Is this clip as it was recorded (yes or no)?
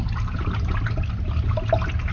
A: yes